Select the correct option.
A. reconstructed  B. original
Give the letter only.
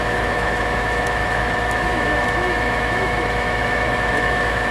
A